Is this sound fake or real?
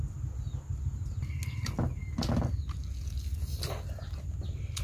real